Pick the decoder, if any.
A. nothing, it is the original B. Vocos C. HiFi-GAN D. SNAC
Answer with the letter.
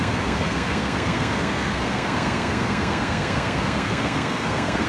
D